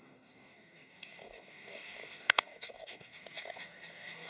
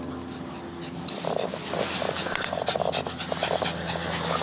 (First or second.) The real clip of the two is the second